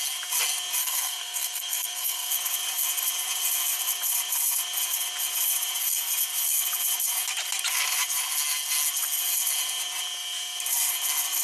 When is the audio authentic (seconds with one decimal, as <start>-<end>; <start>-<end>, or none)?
0.0-0.8; 2.3-11.4